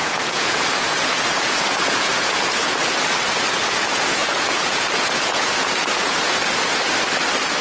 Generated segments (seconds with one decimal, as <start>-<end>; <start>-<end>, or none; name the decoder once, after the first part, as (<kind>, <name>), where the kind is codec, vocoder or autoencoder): 0.0-2.8 (vocoder, Vocos); 3.8-6.4